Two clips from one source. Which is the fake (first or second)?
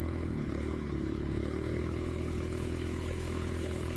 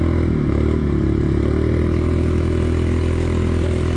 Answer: first